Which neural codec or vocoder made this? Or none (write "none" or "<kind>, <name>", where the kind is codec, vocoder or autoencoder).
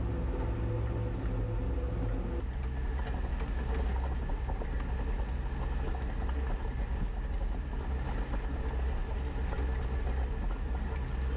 none